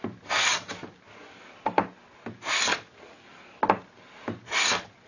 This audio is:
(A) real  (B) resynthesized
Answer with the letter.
A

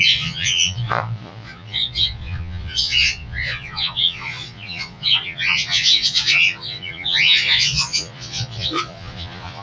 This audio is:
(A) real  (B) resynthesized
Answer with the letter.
B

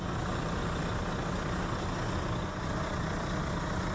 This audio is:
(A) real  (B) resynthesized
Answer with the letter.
A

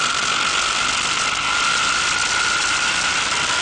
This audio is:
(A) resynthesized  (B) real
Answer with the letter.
B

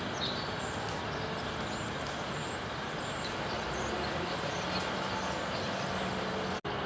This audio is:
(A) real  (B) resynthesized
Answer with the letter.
A